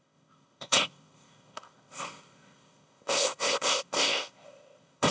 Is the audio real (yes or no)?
no